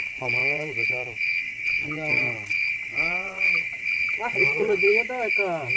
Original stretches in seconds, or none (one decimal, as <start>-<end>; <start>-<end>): 4.9-5.8